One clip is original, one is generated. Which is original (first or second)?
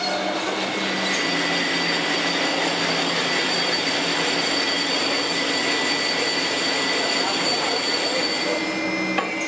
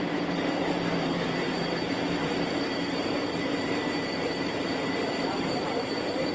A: first